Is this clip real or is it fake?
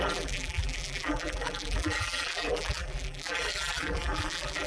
fake